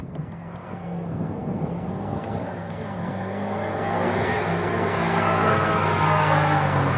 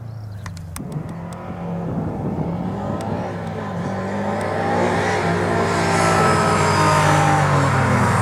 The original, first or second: second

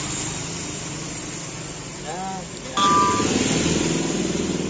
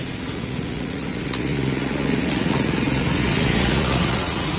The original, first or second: first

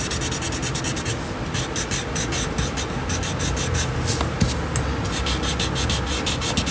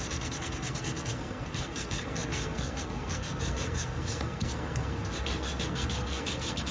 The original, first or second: first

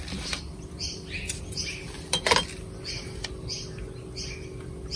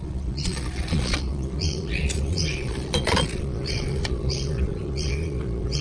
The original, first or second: first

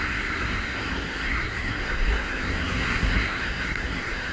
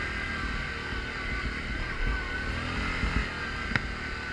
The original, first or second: second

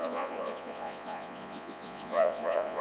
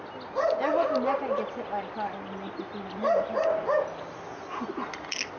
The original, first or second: second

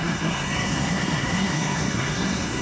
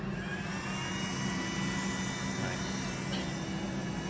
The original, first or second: second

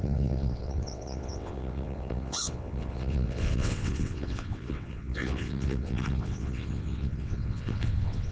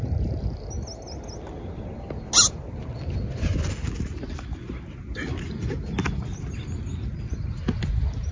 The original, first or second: second